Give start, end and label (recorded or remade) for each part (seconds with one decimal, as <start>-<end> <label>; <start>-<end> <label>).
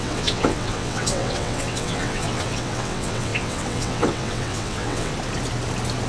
0.0-5.1 remade; 5.1-6.1 recorded